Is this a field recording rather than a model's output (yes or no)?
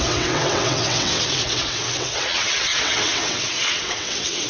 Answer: no